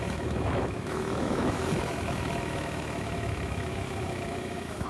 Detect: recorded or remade remade